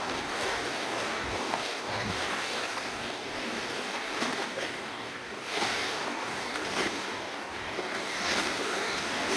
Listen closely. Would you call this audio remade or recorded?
remade